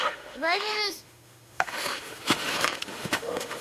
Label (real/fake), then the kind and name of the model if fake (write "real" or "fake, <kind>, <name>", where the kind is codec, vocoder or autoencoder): fake, autoencoder, DAC-VAE